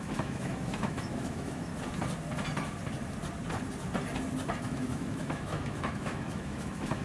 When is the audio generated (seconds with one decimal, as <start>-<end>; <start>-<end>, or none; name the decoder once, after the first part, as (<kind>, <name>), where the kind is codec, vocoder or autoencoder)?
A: 0.0-1.7 (autoencoder, DAC-VAE); 4.6-7.0